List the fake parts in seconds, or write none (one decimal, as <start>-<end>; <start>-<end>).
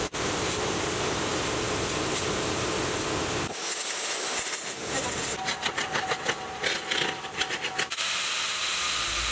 none